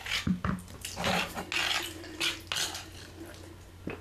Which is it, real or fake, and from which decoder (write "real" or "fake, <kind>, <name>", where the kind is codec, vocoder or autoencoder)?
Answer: real